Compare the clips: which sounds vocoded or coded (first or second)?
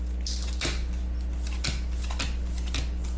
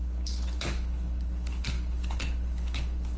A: second